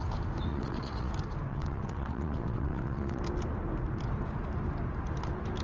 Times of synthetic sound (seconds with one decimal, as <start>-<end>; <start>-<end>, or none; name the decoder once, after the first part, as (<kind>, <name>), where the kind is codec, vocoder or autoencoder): 0.5-1.1 (vocoder, WaveNeXt); 1.5-3.2